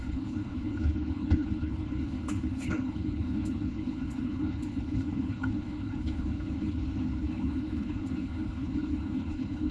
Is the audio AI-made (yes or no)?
yes